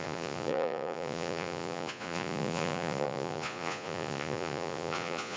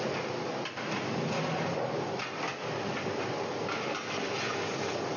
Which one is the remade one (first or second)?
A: first